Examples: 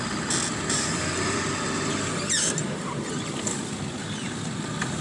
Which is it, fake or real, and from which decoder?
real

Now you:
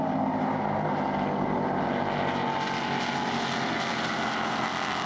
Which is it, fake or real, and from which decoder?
real